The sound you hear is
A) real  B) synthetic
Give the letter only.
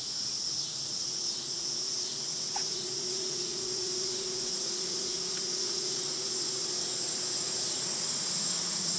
B